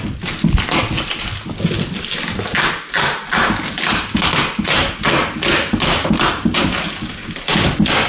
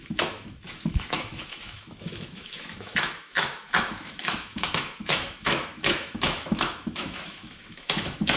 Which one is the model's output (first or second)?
second